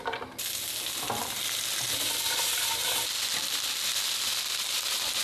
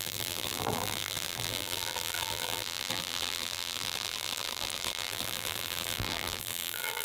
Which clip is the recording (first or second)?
first